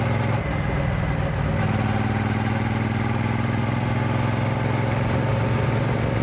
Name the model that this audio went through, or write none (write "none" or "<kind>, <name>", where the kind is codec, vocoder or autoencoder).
none